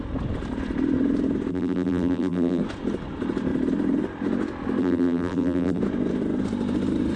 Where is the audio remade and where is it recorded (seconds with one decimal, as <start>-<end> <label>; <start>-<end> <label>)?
0.0-1.5 recorded; 1.5-2.6 remade; 2.6-4.8 recorded; 4.8-5.8 remade; 5.8-7.2 recorded